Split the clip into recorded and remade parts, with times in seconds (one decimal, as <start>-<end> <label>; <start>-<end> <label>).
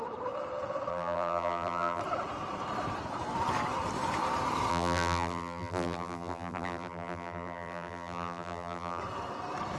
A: 0.0-0.9 recorded; 0.9-2.0 remade; 2.0-4.7 recorded; 4.7-9.0 remade; 9.0-9.8 recorded